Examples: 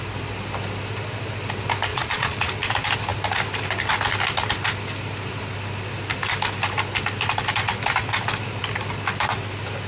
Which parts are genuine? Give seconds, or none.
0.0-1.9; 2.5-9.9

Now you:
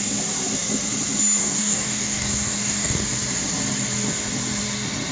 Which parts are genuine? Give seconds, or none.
0.0-1.4; 3.0-5.1

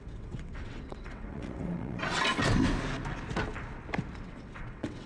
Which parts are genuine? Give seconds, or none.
2.4-4.2